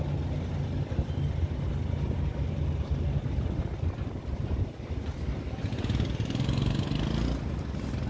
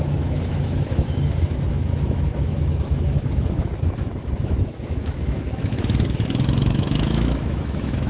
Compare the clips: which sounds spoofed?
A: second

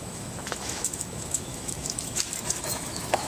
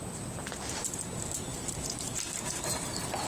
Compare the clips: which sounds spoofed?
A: first